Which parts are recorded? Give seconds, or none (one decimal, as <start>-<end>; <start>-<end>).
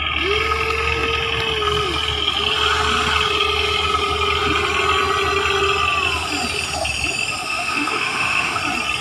0.0-7.4; 8.6-9.0